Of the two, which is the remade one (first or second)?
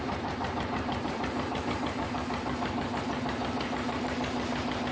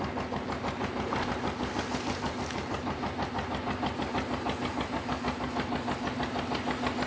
first